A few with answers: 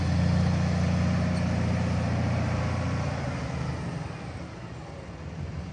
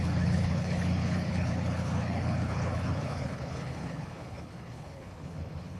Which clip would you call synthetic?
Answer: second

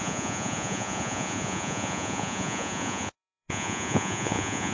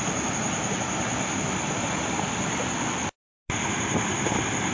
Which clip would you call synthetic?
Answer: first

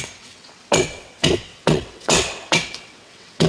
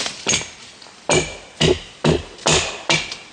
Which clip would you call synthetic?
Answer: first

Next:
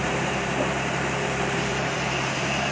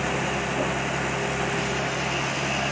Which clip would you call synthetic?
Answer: first